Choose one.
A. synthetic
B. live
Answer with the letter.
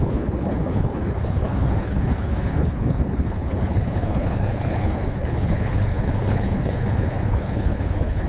A